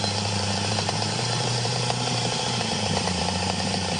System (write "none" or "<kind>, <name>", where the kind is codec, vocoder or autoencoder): vocoder, BigVGAN v2